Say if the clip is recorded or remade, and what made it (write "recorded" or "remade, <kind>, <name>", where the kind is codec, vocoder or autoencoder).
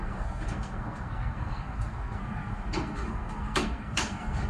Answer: remade, codec, SNAC